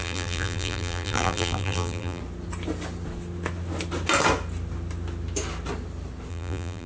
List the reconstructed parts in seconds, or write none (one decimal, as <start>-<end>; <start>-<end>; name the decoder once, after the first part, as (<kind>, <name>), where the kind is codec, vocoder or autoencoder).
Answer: 0.0-2.2 (vocoder, BigVGAN v2); 6.3-6.9